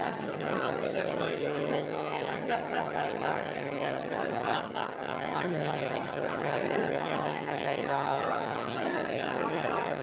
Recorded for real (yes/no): no